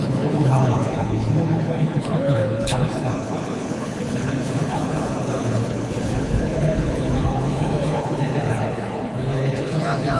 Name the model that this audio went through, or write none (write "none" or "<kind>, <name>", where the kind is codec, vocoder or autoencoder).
codec, HILCodec